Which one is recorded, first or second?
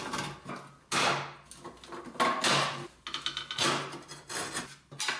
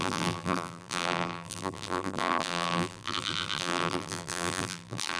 first